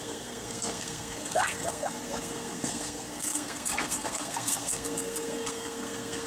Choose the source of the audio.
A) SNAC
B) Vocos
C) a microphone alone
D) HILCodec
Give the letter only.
A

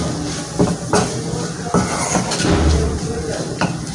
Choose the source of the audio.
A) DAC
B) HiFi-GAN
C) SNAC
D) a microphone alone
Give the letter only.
D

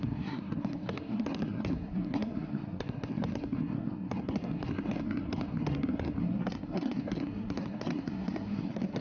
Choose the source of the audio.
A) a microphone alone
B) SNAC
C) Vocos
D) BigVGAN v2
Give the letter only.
B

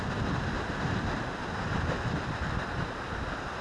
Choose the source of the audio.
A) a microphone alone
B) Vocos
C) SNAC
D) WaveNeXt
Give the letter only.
A